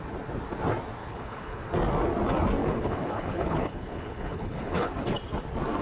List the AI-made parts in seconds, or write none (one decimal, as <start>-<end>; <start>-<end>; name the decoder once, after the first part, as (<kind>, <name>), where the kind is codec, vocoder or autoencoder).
1.0-1.6 (codec, HILCodec); 2.6-4.9